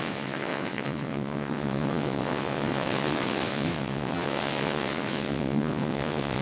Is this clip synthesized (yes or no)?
yes